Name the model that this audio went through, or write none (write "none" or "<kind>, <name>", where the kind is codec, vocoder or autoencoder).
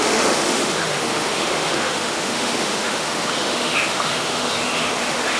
autoencoder, DAC-VAE